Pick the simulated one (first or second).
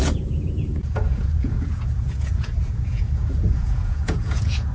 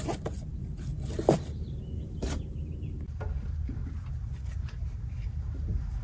first